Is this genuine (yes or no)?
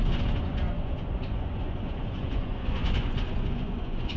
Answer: no